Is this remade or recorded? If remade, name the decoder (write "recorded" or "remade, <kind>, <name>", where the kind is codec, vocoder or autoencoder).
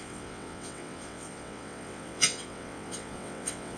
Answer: remade, vocoder, WaveNeXt